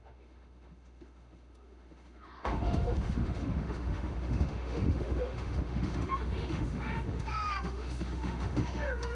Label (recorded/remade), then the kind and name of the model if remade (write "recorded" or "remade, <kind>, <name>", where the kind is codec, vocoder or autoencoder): remade, autoencoder, DAC-VAE